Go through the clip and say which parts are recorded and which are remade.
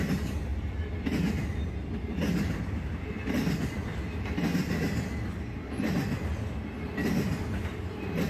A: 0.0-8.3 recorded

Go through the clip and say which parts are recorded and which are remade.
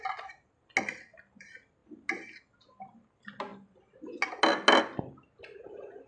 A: 0.0-6.1 recorded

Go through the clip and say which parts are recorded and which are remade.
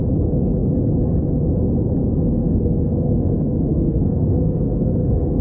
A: 0.0-2.0 recorded; 2.0-5.4 remade